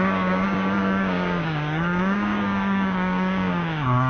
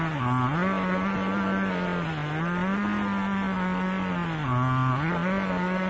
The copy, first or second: first